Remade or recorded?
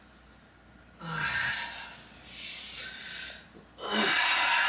recorded